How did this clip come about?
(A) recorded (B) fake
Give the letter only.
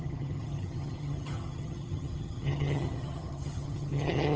B